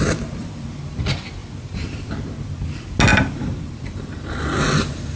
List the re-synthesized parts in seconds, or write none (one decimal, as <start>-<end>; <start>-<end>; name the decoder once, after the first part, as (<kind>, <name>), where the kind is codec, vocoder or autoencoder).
0.4-1.0 (vocoder, BigVGAN v2); 1.4-2.1; 3.1-4.6